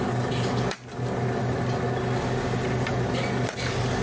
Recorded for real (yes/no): yes